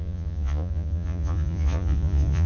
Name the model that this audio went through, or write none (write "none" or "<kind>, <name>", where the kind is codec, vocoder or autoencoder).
vocoder, Vocos